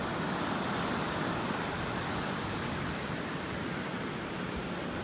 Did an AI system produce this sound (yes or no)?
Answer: no